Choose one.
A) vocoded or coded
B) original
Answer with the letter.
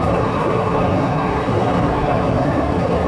A